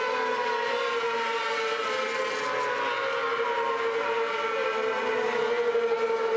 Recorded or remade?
recorded